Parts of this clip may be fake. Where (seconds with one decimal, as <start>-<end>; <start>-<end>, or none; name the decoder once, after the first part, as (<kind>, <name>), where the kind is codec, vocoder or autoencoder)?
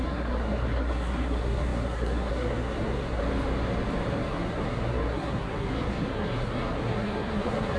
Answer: 0.0-3.2 (codec, SNAC); 4.2-7.8